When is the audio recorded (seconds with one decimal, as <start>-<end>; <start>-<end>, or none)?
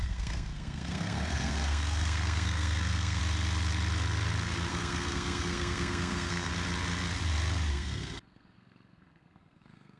3.2-4.7; 6.5-7.7